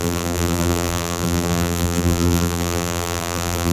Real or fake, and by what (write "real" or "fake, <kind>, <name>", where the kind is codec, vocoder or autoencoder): fake, vocoder, BigVGAN v2